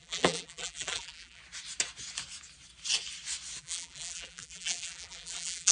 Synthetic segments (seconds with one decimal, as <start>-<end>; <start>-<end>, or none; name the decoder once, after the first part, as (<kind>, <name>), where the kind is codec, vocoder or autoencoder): 0.0-1.4 (vocoder, BigVGAN v2); 3.6-5.7